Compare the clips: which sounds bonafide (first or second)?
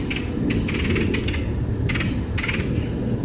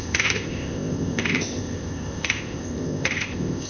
first